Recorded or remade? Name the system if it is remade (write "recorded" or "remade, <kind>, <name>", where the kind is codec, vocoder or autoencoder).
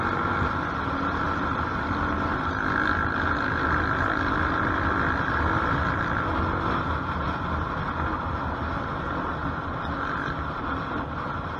recorded